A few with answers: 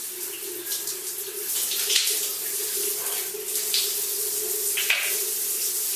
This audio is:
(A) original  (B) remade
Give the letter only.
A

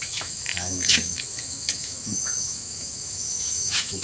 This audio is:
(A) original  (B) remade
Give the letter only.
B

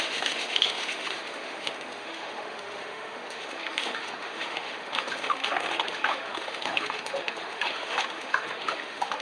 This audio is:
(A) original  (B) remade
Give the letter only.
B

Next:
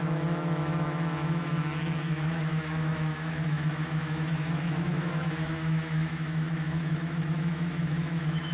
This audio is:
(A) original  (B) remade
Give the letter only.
B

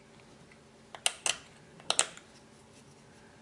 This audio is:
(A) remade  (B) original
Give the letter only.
B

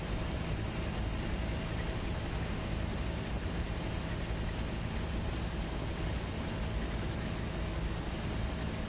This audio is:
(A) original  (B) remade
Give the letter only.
A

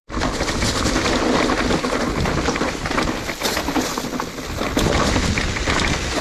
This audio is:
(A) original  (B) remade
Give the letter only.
A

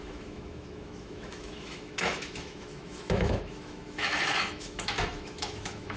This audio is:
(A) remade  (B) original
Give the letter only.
A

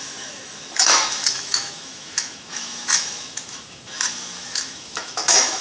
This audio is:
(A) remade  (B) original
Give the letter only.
A